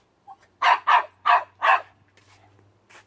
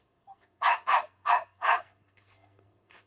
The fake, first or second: second